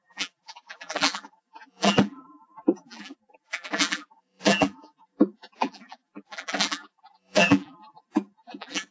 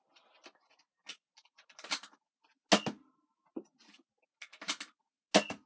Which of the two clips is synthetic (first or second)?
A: first